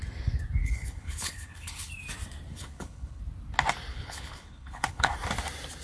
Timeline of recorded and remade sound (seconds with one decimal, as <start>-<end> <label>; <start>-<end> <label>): 0.0-0.6 recorded; 0.6-1.9 remade; 1.9-2.5 recorded; 2.5-3.2 remade; 3.2-3.9 recorded; 3.9-5.1 remade; 5.1-5.8 recorded